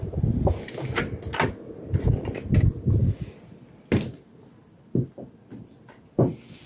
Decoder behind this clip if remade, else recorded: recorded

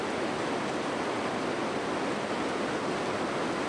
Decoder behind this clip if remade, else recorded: recorded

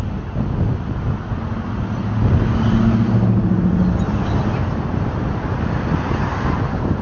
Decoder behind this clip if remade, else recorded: recorded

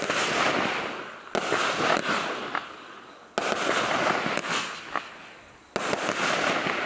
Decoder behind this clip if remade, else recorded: recorded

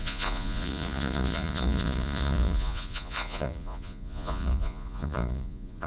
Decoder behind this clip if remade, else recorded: remade, vocoder, Vocos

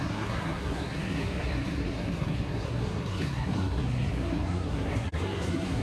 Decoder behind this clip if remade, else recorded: remade, codec, SNAC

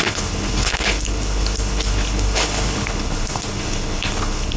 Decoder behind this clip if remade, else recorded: remade, codec, HILCodec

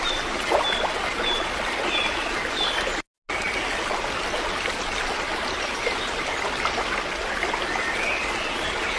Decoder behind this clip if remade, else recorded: recorded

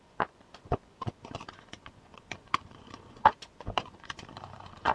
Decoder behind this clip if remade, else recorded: remade, vocoder, Vocos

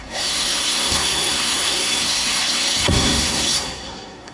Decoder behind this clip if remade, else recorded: remade, codec, SNAC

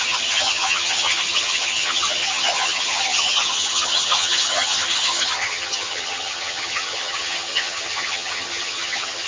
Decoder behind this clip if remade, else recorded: remade, vocoder, HiFi-GAN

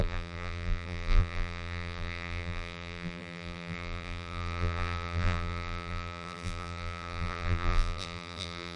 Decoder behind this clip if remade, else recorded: remade, vocoder, BigVGAN v2